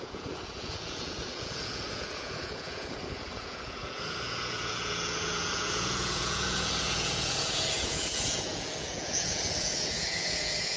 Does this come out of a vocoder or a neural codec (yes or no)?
yes